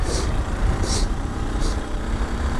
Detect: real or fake fake